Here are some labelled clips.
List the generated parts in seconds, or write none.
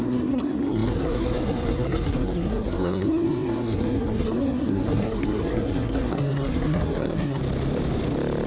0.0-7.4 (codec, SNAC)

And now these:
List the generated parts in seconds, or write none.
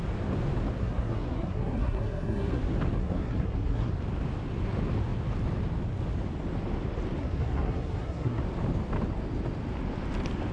0.8-2.6 (codec, SNAC); 3.0-3.9; 7.2-8.4